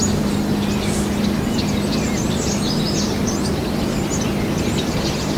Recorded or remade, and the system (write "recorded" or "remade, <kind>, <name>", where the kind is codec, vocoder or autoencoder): recorded